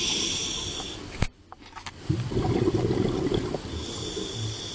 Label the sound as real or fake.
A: real